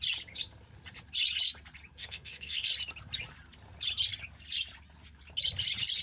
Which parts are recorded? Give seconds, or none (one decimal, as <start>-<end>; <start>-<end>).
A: 0.0-2.0; 2.7-6.0